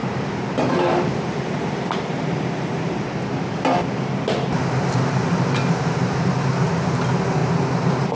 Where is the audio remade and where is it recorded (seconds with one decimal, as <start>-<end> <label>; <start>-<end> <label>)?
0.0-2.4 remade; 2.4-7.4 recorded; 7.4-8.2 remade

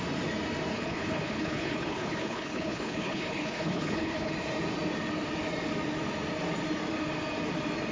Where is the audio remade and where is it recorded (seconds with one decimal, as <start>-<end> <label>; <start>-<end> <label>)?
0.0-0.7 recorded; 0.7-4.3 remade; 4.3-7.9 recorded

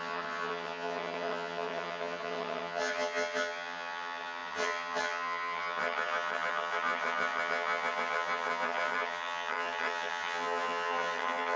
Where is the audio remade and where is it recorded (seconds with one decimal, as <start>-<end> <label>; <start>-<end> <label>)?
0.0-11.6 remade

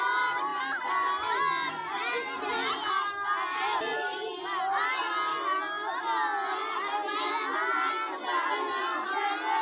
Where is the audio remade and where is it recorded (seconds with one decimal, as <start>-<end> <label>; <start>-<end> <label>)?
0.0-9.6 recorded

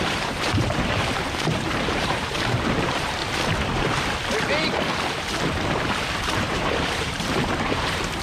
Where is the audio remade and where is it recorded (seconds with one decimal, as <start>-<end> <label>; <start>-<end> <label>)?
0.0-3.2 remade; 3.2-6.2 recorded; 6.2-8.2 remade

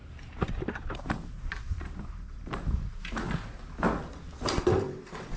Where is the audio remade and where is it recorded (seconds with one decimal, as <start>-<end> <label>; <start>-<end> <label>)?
0.0-3.0 remade; 3.0-5.4 recorded

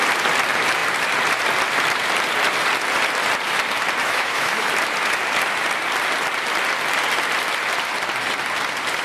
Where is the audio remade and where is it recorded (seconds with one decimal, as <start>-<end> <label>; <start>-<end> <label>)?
0.0-4.0 recorded; 4.0-4.7 remade; 4.7-9.0 recorded

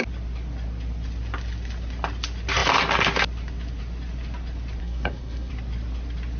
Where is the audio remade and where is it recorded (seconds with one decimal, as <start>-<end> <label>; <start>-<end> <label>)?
0.0-4.8 recorded; 4.8-5.5 remade; 5.5-6.4 recorded